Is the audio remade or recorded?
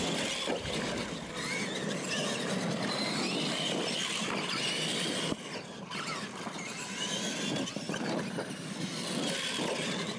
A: recorded